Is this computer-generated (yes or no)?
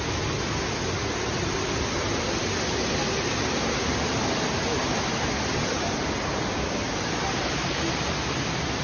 no